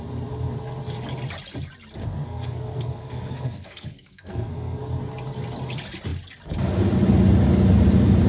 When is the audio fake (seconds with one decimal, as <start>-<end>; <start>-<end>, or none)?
2.0-4.8